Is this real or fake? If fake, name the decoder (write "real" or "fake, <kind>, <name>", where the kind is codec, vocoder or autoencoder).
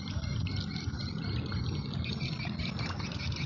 real